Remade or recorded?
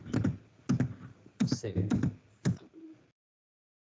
recorded